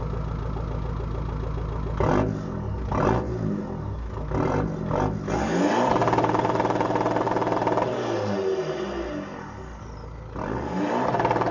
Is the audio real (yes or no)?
yes